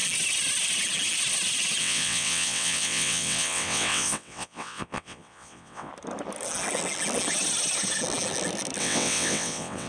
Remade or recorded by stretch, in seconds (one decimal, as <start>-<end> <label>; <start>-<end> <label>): 0.0-1.8 recorded; 1.8-5.9 remade; 5.9-8.8 recorded; 8.8-9.9 remade